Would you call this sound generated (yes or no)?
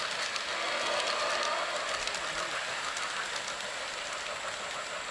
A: no